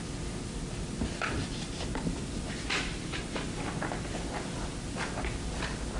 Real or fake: real